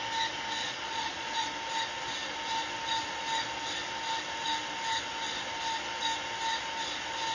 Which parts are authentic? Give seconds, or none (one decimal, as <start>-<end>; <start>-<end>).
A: 0.0-0.6; 1.5-7.3

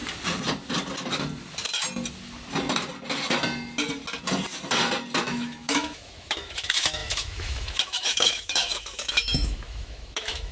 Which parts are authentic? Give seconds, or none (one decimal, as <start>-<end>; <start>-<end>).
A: 0.0-5.2

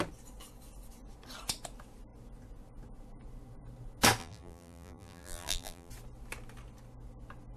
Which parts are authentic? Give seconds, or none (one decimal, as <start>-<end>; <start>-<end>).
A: 0.0-4.2; 5.9-7.6

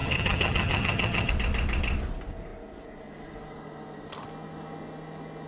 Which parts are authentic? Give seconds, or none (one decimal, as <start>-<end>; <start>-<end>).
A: 1.3-5.5

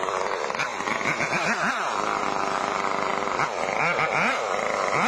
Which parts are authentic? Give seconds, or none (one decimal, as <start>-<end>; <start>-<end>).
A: 0.0-5.1